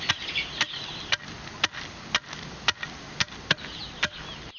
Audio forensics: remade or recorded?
recorded